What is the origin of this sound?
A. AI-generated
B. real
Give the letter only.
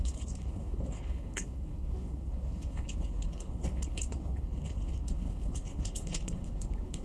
A